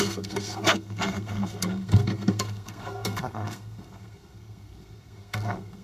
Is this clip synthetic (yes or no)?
yes